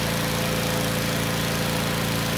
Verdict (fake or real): real